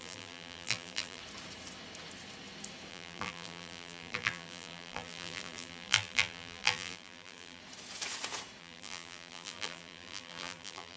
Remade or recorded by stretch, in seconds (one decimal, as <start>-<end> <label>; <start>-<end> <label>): 0.0-1.2 remade; 1.2-2.9 recorded; 2.9-7.6 remade; 7.6-8.6 recorded; 8.6-11.0 remade

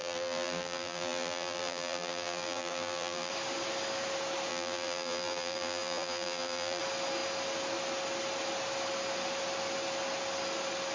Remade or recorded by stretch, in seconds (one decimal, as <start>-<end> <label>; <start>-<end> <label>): 0.0-3.3 remade; 3.3-4.5 recorded; 4.5-6.8 remade; 6.8-10.9 recorded

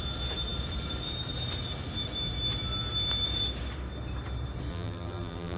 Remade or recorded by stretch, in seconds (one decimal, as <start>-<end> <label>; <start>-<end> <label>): 0.0-4.7 recorded; 4.7-5.6 remade

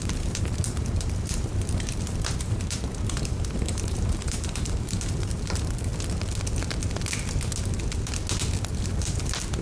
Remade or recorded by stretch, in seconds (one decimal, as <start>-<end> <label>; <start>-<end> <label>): 0.0-5.9 remade; 5.9-8.8 recorded; 8.8-9.6 remade

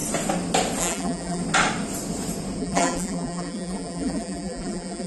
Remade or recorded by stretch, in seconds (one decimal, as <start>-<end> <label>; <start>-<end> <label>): 0.0-0.8 recorded; 0.8-1.4 remade; 1.4-2.6 recorded; 2.6-5.1 remade